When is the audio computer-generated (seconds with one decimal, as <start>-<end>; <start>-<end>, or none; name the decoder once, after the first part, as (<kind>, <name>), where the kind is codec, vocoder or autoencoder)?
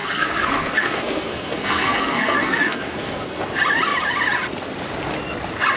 0.0-3.5 (codec, SNAC)